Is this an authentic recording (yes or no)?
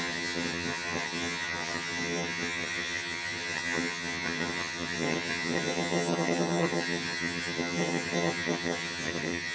no